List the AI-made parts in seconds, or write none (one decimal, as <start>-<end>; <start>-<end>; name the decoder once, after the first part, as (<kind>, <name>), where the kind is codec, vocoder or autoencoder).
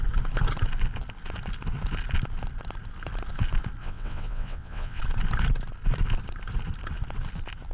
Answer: 3.8-5.0 (vocoder, WaveNeXt)